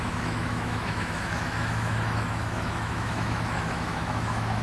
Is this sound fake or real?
fake